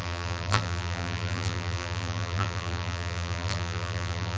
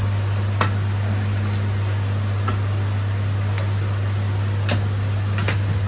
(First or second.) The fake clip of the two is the first